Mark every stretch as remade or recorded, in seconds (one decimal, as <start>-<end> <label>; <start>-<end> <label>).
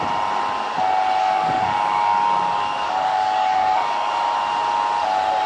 0.0-1.2 recorded; 1.2-4.1 remade; 4.1-5.5 recorded